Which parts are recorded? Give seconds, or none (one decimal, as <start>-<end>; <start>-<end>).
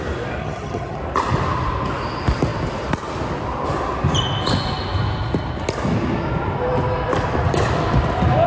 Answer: 0.0-0.4; 1.0-8.5